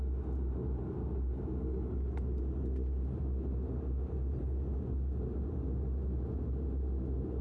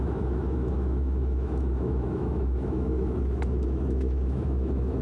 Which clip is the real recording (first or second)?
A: first